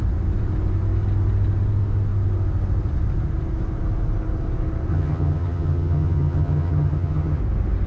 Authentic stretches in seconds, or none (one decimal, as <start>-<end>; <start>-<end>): 0.0-4.9; 7.4-7.9